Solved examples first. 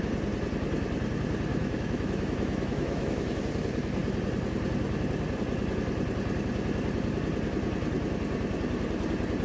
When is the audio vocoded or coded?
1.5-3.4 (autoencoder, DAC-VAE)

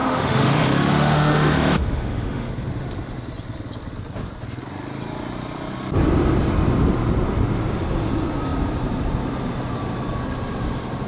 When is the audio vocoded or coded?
0.0-2.5 (autoencoder, DAC-VAE)

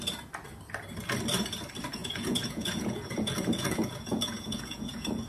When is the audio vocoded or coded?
2.0-5.3 (vocoder, Vocos)

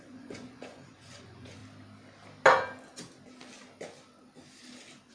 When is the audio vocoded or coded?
0.0-1.6 (vocoder, Vocos)

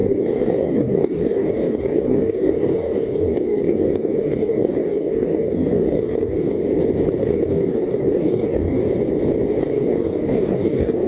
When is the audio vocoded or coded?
0.0-6.6 (codec, DAC); 7.2-8.8; 9.6-11.1

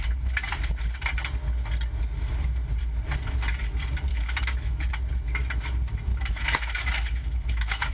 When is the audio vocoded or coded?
4.1-4.9 (autoencoder, DAC-VAE); 6.1-7.9